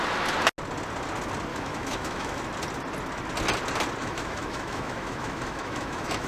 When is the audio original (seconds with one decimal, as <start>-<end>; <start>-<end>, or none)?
0.0-1.5; 2.4-4.0